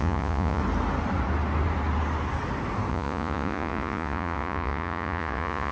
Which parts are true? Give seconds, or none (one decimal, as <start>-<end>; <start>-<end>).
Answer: 0.6-2.9